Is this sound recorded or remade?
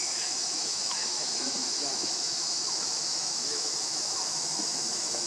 remade